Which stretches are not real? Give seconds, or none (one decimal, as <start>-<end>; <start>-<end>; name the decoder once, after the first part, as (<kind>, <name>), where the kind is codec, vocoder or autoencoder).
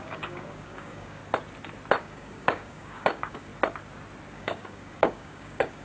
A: 0.0-1.2 (codec, DAC); 2.0-3.5; 4.3-5.8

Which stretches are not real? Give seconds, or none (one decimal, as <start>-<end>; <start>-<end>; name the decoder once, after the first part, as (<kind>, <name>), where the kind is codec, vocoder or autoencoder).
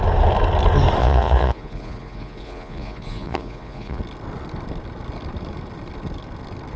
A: 1.0-4.0 (vocoder, Vocos)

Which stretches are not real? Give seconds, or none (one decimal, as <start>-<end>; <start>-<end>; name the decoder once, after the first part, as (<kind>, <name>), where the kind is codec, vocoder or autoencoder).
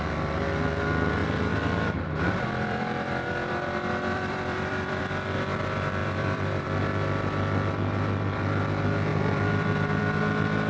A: 1.2-5.0 (vocoder, BigVGAN v2); 6.0-6.8; 9.1-10.0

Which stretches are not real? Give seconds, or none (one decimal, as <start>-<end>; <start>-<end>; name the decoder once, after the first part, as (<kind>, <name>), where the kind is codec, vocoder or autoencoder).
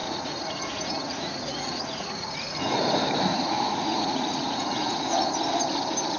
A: 0.0-2.8 (vocoder, Vocos); 3.3-5.3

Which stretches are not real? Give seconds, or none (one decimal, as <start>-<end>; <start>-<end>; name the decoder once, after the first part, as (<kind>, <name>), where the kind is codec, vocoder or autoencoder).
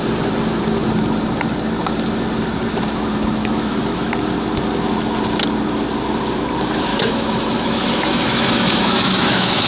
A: 3.4-4.1 (autoencoder, DAC-VAE); 6.9-9.7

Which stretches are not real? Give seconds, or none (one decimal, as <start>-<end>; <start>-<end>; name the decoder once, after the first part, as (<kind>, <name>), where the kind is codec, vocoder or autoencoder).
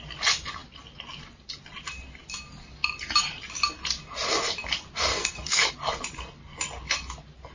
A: 5.1-5.7 (codec, SNAC)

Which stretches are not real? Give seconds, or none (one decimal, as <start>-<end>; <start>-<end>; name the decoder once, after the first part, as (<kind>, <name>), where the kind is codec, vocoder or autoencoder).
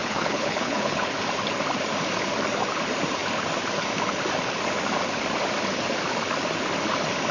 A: 0.0-1.1 (codec, HILCodec)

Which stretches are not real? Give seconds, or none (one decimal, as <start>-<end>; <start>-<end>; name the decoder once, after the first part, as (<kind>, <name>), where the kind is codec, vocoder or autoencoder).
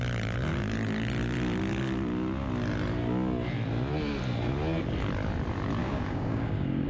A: 5.8-6.9 (codec, DAC)